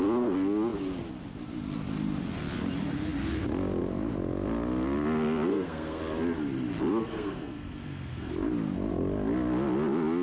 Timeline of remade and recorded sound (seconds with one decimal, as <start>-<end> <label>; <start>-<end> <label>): 0.0-5.5 recorded; 5.5-6.0 remade; 6.0-7.0 recorded; 7.0-8.3 remade; 8.3-10.2 recorded